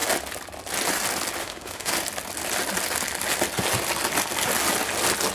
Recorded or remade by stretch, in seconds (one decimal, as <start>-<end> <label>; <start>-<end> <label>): 0.0-1.4 recorded; 1.4-1.9 remade; 1.9-5.3 recorded